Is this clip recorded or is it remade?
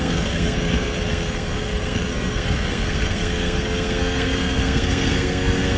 remade